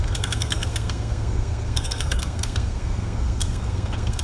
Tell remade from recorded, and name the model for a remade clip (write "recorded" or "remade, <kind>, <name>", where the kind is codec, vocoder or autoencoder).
remade, codec, SNAC